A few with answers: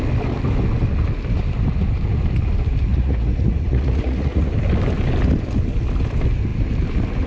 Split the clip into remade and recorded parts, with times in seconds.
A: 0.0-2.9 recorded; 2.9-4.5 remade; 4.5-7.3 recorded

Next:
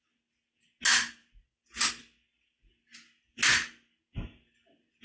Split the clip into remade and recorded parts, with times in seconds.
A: 0.0-5.0 recorded

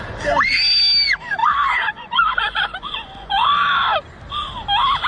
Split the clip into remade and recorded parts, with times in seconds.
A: 0.0-1.4 recorded; 1.4-3.7 remade; 3.7-5.1 recorded

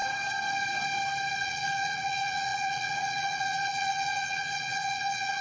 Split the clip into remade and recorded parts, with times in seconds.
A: 0.0-1.4 recorded; 1.4-5.4 remade

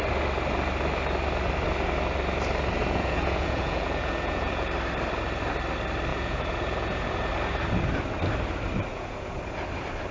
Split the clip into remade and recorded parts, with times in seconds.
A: 0.0-2.8 recorded; 2.8-4.7 remade; 4.7-6.1 recorded; 6.1-7.3 remade; 7.3-8.9 recorded; 8.9-9.4 remade; 9.4-10.1 recorded

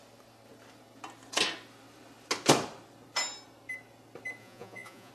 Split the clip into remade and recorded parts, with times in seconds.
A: 0.0-4.4 recorded; 4.4-5.1 remade